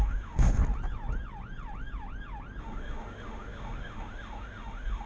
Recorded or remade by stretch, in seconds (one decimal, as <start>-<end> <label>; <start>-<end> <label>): 0.0-0.6 remade; 0.6-2.6 recorded; 2.6-5.1 remade